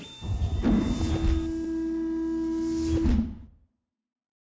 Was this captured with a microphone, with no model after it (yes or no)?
yes